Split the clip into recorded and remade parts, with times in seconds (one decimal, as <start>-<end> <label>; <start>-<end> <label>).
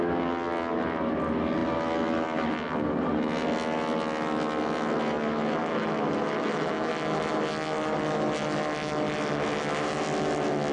0.0-5.6 recorded; 5.6-6.9 remade; 6.9-10.7 recorded